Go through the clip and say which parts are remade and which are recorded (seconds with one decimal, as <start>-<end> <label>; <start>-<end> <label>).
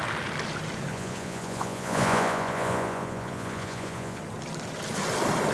0.0-0.9 recorded; 0.9-4.2 remade; 4.2-5.5 recorded